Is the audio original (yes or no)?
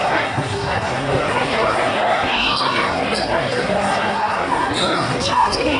no